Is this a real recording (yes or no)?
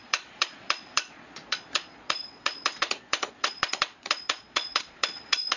no